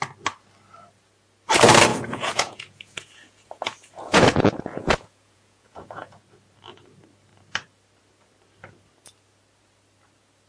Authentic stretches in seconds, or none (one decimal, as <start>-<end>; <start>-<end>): 0.0-1.9; 6.2-10.5

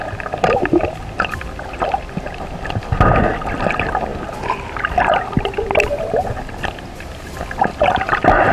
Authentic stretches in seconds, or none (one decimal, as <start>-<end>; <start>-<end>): 0.0-8.5

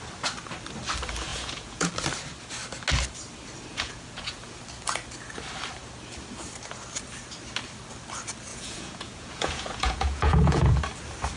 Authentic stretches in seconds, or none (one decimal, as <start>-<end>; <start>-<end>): 0.0-1.3; 1.9-3.7; 4.6-8.5; 10.8-11.4

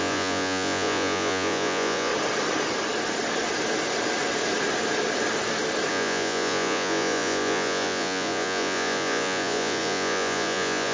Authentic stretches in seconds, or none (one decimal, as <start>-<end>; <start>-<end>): 2.1-5.9

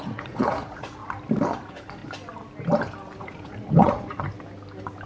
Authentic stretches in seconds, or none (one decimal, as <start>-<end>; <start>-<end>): 1.0-1.6; 2.0-3.2; 4.3-5.1

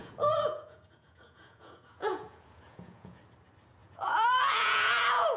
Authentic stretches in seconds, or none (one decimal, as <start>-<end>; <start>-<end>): 3.2-3.8

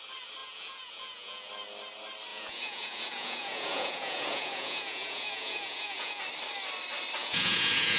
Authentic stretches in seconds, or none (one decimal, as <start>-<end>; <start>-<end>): 0.0-0.4; 1.5-2.3; 6.2-7.2

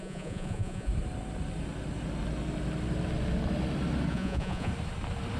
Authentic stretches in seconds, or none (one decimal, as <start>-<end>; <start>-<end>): 0.9-4.1; 4.7-5.4